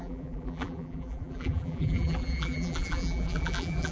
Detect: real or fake fake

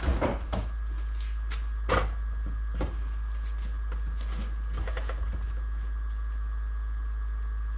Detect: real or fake real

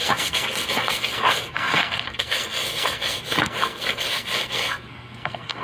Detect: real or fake fake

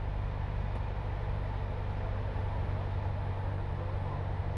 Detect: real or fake real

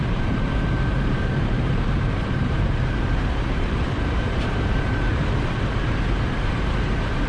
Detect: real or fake fake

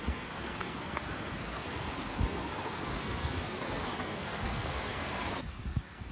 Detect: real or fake fake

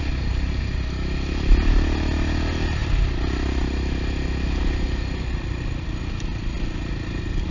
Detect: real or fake real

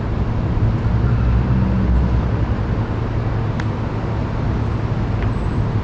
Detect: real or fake real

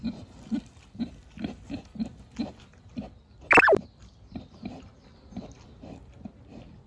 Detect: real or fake real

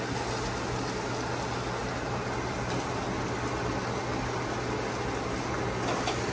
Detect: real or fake real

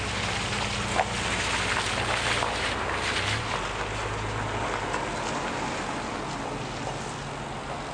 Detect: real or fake real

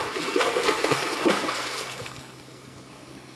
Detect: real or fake fake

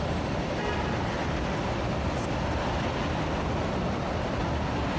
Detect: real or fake real